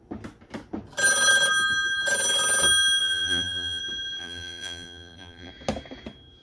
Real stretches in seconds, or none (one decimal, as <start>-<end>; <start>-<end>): 0.0-3.0; 3.8-4.2; 5.5-6.4